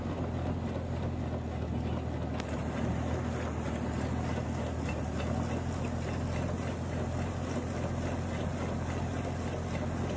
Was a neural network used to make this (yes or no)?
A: no